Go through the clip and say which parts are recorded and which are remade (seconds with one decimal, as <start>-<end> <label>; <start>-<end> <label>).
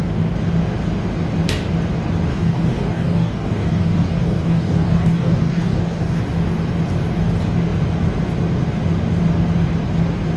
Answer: 0.0-2.3 recorded; 2.3-6.2 remade; 6.2-10.4 recorded